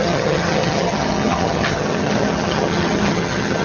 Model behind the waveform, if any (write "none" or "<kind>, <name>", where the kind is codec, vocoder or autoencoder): vocoder, HiFi-GAN